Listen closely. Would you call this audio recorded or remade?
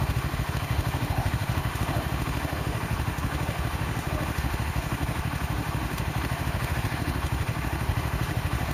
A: remade